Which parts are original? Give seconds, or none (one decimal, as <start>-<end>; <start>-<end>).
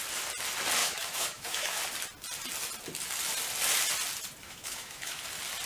0.0-0.8; 1.8-4.4; 5.2-5.7